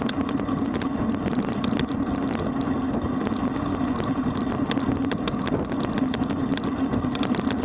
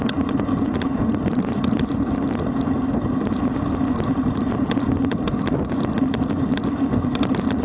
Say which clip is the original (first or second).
first